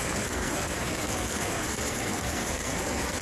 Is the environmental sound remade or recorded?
remade